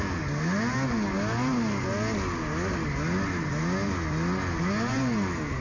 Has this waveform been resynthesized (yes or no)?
no